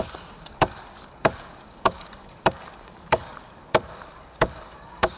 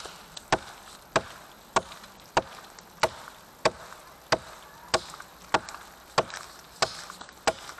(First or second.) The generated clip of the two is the first